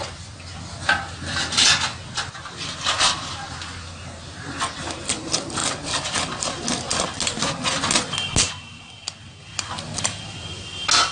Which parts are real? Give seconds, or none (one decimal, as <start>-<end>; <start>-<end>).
0.0-11.1